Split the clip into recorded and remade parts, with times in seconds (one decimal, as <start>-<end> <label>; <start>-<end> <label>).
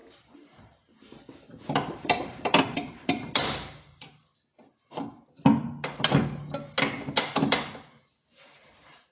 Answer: 0.0-4.3 remade; 4.3-7.1 recorded; 7.1-9.1 remade